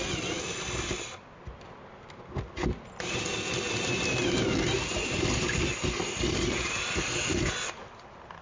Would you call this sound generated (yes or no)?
no